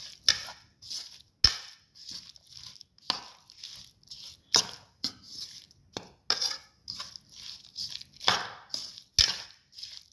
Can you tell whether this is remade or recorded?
recorded